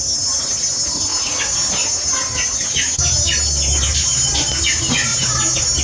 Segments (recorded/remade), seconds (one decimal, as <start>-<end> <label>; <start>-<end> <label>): 0.0-5.8 recorded